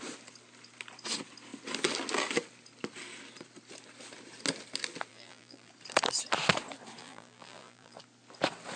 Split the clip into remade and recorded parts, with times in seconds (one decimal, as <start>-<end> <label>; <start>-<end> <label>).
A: 0.0-5.1 recorded; 5.1-5.7 remade; 5.7-7.0 recorded; 7.0-8.0 remade; 8.0-8.8 recorded